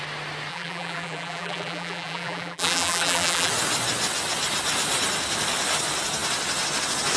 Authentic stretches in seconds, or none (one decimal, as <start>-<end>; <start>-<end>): 0.0-0.5; 3.5-7.2